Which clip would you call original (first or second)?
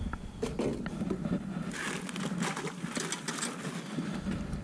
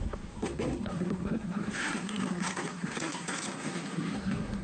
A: first